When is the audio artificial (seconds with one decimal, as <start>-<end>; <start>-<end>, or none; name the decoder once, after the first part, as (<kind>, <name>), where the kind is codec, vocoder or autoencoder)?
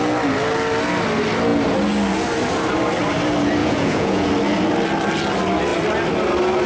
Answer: 3.6-4.3 (vocoder, Vocos)